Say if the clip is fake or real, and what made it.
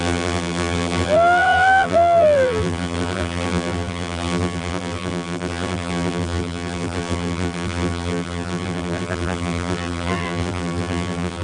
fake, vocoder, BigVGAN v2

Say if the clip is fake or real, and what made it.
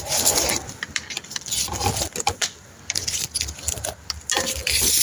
fake, vocoder, BigVGAN v2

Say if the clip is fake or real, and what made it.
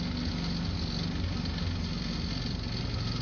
real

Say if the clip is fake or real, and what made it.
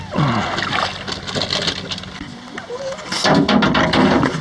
real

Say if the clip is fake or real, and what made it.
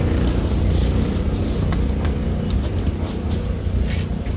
fake, vocoder, BigVGAN v2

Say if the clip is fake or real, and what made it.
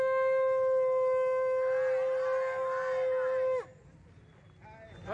real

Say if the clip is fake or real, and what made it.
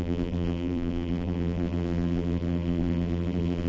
fake, vocoder, BigVGAN v2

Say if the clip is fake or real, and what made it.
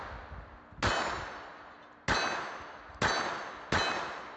real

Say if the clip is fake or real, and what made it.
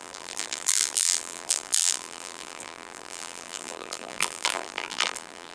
fake, vocoder, BigVGAN v2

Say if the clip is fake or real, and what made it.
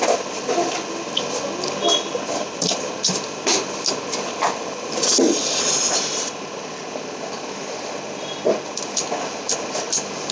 real